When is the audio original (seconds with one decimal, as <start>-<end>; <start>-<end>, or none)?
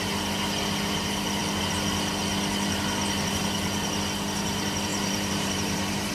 0.0-4.9